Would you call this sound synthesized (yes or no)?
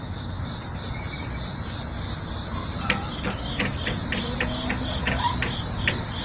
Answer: no